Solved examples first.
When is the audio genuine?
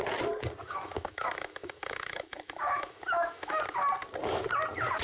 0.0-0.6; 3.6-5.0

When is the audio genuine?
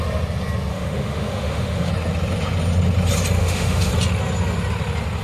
0.0-0.7; 1.9-3.4; 3.9-5.2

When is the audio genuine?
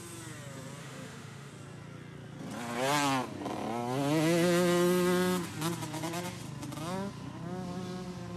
0.0-0.8; 1.5-8.4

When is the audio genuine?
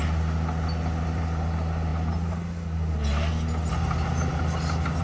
0.0-5.0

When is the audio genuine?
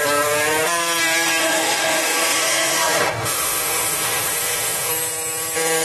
0.0-1.4; 4.9-5.8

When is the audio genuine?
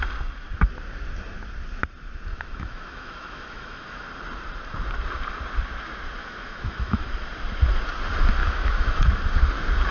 0.0-2.3; 4.0-6.2; 7.1-8.4; 9.1-9.9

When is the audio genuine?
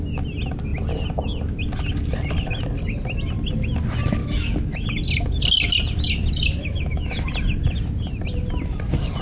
0.0-4.2; 5.0-6.6; 7.3-9.2